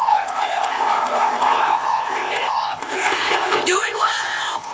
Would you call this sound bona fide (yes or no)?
no